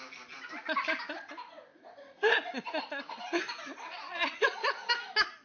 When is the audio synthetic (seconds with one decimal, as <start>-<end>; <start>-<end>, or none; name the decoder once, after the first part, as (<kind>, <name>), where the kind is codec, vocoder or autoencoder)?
1.7-4.9 (vocoder, Vocos)